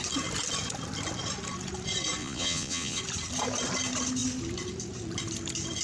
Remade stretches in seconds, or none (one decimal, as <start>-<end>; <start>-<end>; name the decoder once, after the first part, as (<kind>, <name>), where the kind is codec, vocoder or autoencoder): 2.2-3.0 (vocoder, Vocos)